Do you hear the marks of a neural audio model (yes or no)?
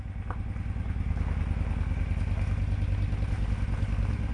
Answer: no